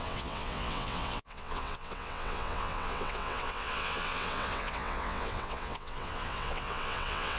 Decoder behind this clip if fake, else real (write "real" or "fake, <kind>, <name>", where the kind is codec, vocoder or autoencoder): fake, vocoder, WaveNeXt